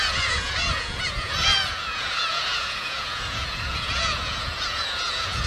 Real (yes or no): no